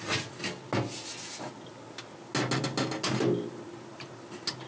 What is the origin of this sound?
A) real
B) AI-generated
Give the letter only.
A